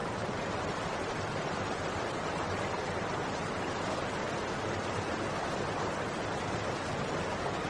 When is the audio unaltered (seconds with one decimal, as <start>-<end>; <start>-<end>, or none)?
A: 3.8-7.7